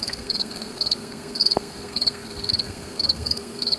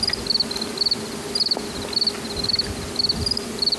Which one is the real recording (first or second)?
second